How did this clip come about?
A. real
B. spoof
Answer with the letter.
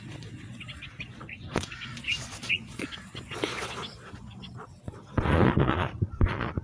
B